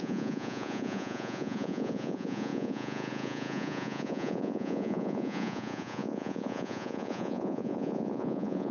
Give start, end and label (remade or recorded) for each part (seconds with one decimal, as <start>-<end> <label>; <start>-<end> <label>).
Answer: 0.0-8.7 remade